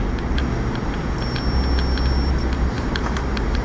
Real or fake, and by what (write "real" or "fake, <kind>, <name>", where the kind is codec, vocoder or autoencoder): real